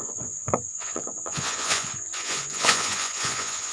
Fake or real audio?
fake